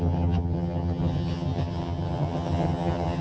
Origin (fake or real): fake